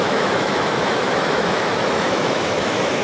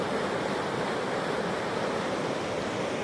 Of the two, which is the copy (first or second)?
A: first